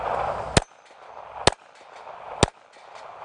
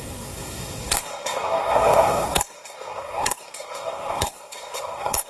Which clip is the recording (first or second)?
first